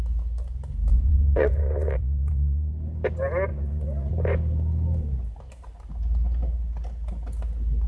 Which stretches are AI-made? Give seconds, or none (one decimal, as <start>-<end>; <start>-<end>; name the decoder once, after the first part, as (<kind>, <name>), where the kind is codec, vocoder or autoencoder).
0.9-2.7 (vocoder, Vocos); 3.5-4.1